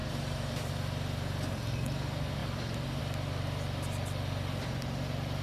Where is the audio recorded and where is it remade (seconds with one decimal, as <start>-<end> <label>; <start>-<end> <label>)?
0.0-0.7 remade; 0.7-2.4 recorded; 2.4-3.0 remade; 3.0-5.4 recorded